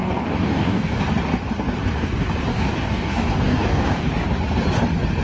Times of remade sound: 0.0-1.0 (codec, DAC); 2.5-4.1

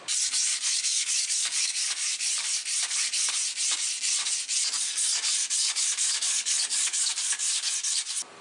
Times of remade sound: 0.5-3.3 (codec, DAC); 5.6-7.7

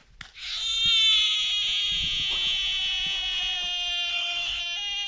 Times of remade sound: 4.1-4.6 (codec, DAC)

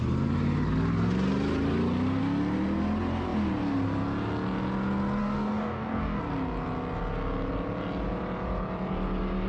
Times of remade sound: 5.2-6.2 (codec, DAC)

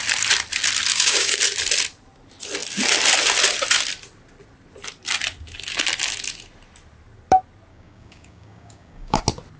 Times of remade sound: 0.9-1.4 (codec, DAC); 7.7-9.2

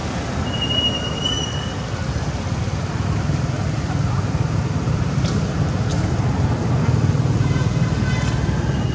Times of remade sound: none